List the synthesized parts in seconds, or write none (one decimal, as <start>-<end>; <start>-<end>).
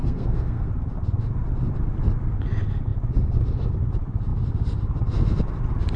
0.0-0.7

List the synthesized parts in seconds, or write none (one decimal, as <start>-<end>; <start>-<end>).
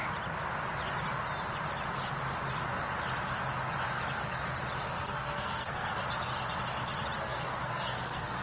4.9-6.0; 7.2-8.4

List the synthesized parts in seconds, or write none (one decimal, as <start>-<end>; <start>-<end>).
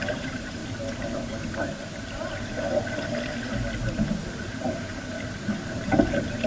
0.0-0.6; 3.9-6.5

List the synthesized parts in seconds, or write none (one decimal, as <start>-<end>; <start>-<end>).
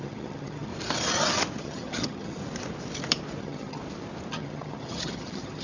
0.0-0.7; 1.6-2.4; 3.4-3.8; 4.3-5.6